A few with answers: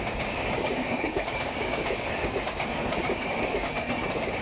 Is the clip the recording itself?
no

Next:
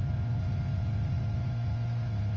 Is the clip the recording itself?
no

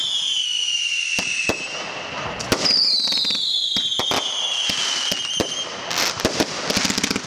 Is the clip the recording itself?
yes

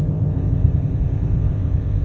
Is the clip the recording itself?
no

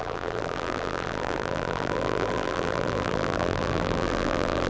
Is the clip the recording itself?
no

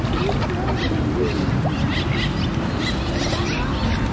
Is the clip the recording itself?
yes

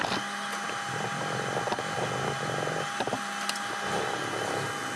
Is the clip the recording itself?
yes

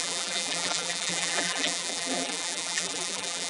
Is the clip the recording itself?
no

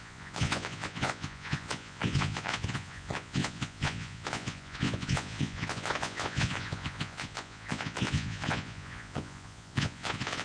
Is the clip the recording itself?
no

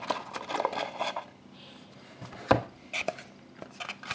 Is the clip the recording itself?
yes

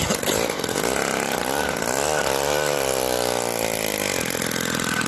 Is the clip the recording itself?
yes